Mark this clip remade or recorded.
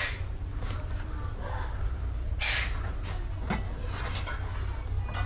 recorded